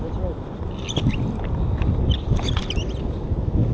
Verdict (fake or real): real